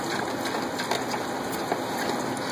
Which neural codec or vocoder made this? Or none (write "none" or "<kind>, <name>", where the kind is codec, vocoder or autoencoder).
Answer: none